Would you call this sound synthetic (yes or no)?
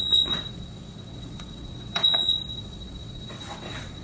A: yes